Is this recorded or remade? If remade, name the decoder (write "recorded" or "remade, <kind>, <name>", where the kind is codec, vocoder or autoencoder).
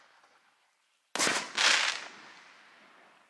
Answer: recorded